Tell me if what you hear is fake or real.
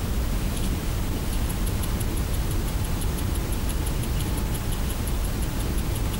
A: real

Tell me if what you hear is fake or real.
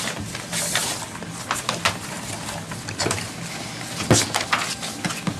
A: real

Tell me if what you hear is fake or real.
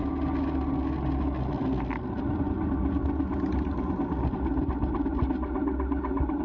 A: real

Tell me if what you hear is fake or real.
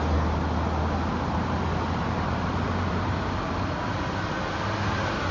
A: real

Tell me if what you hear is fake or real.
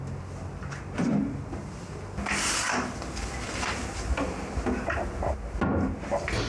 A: real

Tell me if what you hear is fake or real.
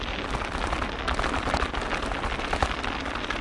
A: real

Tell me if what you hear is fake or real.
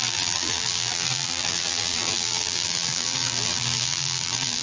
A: fake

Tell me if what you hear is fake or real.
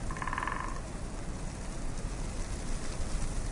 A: fake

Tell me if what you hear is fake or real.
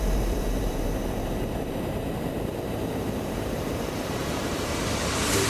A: fake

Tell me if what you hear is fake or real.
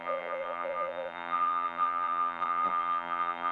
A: fake